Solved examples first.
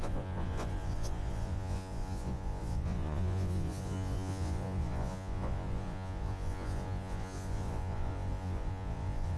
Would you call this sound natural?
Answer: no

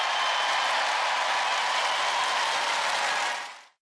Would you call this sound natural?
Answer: yes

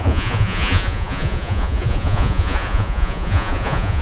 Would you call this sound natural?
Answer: no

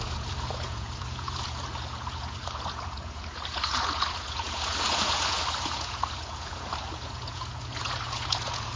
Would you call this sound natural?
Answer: no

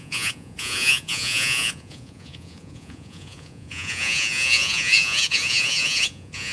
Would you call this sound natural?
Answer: no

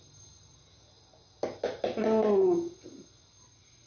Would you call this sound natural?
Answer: yes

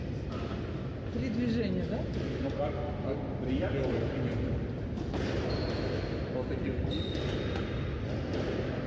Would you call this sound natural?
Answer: yes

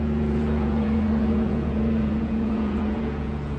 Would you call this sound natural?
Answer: no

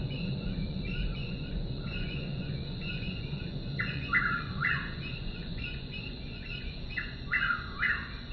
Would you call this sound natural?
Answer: no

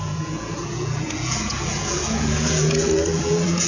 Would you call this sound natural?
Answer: no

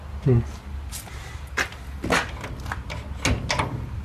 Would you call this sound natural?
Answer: yes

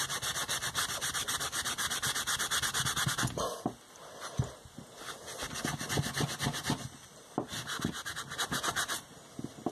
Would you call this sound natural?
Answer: yes